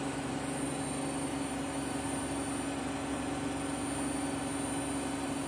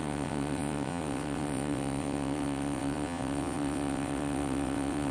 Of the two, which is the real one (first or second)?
first